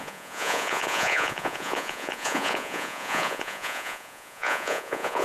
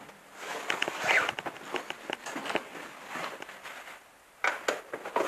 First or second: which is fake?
first